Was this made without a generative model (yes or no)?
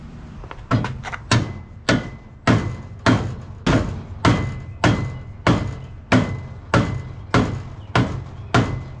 yes